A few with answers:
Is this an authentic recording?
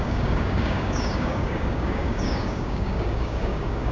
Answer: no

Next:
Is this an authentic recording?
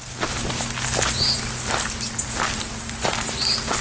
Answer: yes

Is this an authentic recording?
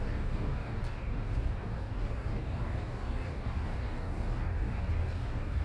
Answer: no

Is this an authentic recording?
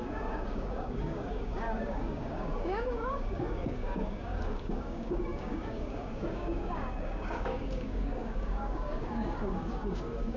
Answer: no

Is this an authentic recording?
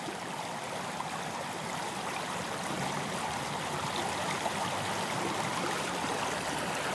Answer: yes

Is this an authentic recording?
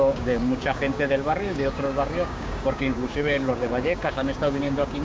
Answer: no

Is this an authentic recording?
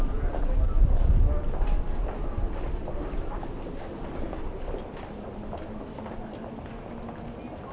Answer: yes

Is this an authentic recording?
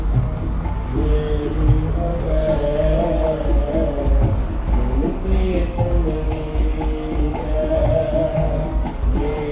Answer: no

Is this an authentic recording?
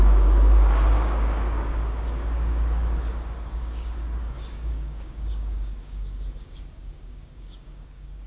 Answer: no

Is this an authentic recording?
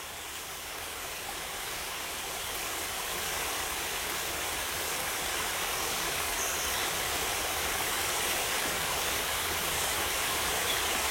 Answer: no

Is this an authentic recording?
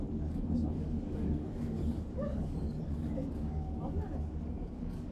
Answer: no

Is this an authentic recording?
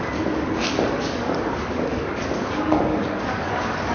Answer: no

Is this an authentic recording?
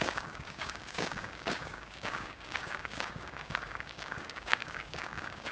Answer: no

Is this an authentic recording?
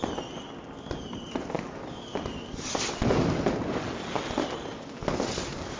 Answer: yes